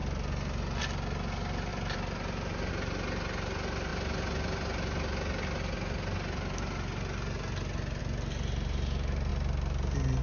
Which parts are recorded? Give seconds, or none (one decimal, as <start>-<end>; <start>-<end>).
0.0-1.7; 2.7-10.2